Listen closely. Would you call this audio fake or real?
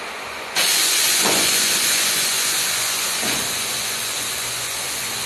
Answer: fake